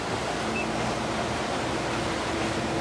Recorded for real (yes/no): yes